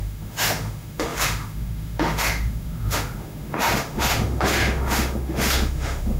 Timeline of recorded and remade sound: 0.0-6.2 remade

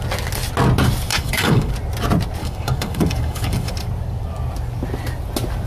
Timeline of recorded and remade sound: 0.0-1.1 recorded; 1.1-1.7 remade; 1.7-2.4 recorded; 2.4-3.7 remade; 3.7-5.7 recorded

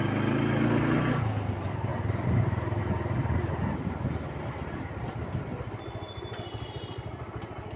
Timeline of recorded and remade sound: 0.0-7.8 recorded

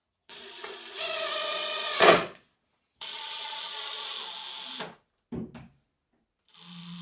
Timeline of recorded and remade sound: 0.0-4.2 remade; 4.2-7.0 recorded

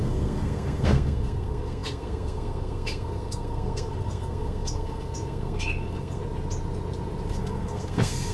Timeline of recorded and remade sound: 0.0-6.2 remade; 6.2-7.3 recorded; 7.3-8.3 remade